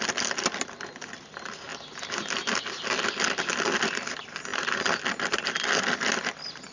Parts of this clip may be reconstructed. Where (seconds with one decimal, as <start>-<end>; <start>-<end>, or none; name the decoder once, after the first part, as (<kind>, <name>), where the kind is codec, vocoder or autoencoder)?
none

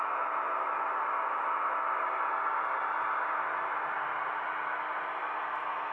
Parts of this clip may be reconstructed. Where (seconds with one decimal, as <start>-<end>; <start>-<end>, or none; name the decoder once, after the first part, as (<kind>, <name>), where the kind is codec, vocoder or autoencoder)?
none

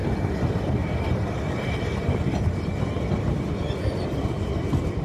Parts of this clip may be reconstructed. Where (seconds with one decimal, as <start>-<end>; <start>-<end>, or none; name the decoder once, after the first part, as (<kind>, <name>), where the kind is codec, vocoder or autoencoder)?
none